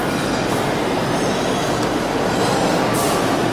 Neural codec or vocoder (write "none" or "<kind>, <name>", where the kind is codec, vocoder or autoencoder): none